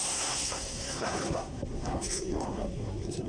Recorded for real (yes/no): no